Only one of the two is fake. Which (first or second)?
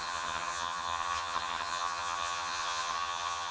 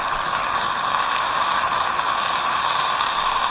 first